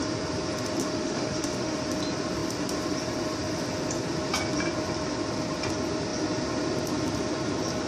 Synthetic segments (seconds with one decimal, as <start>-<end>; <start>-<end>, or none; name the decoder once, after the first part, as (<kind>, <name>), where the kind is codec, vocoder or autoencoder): 0.8-1.8 (autoencoder, DAC-VAE)